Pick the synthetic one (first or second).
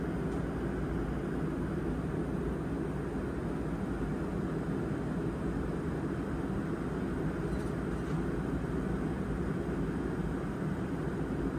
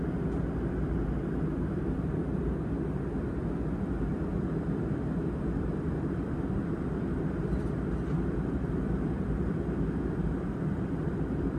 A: second